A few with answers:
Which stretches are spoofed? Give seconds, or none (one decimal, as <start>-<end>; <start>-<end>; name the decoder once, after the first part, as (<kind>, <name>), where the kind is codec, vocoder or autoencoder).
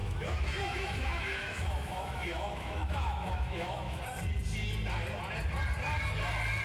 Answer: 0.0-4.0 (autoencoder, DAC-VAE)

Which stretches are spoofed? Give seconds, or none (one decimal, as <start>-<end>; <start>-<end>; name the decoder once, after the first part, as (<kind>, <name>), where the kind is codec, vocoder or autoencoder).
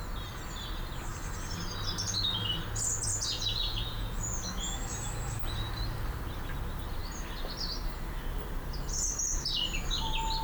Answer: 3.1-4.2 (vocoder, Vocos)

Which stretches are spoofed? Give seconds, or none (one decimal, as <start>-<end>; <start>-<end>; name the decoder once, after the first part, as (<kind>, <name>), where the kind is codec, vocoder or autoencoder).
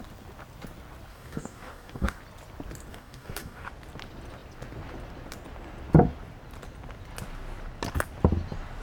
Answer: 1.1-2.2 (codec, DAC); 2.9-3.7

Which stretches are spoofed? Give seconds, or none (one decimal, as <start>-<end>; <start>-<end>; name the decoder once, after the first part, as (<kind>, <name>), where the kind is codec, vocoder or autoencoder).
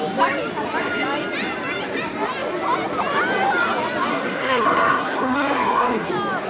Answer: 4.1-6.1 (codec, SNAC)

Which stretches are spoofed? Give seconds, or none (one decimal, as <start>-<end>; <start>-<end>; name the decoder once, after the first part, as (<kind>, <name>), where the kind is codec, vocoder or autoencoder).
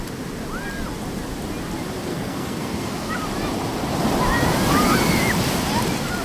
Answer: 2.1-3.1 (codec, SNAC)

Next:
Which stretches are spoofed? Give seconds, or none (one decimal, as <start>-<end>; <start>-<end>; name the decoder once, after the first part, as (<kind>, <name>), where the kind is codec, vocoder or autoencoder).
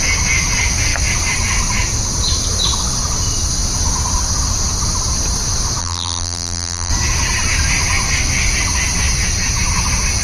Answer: 5.8-6.9 (vocoder, BigVGAN v2)